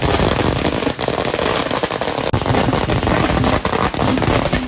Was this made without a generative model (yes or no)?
yes